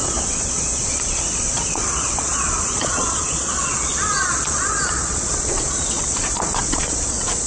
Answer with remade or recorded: remade